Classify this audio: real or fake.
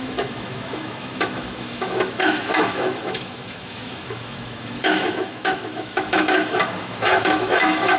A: fake